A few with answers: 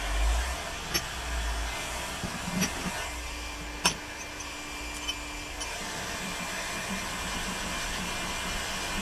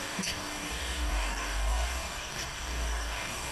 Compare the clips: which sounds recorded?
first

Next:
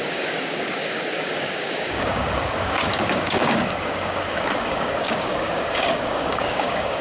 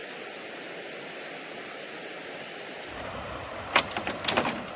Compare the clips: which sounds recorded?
second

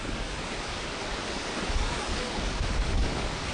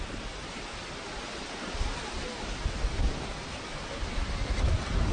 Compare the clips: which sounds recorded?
second